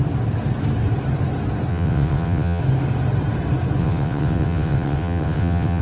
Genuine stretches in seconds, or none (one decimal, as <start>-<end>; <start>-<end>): 0.0-1.7; 2.6-3.8